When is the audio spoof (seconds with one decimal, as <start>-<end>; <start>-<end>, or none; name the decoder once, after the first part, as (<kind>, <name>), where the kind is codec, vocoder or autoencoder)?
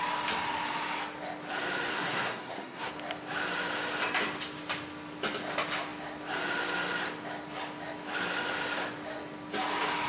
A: 1.9-2.9 (codec, SNAC)